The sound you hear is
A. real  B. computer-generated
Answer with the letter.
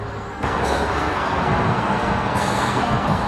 B